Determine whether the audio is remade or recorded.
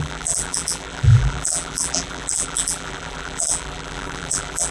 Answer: remade